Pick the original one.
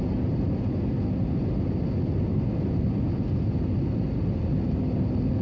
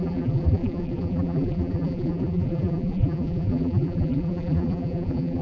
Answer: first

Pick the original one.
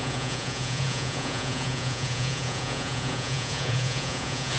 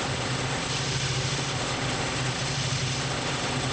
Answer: second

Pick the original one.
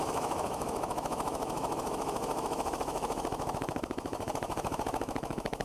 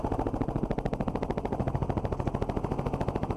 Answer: second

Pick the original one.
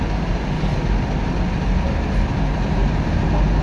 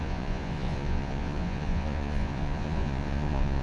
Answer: first